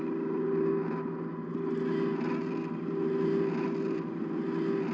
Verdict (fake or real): real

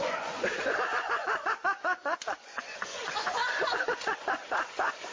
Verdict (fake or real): fake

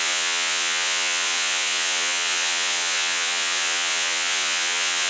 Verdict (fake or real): fake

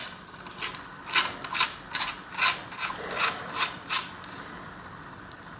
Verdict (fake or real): real